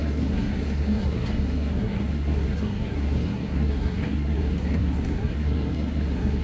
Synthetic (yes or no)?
yes